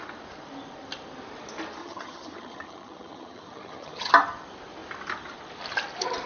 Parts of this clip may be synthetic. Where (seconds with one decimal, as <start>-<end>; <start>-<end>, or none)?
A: 1.8-4.1